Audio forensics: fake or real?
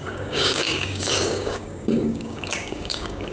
fake